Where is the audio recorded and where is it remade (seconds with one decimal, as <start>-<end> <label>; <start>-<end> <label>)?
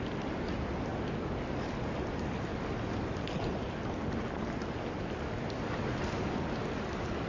0.0-7.3 recorded